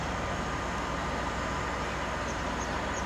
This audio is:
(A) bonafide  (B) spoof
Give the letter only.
A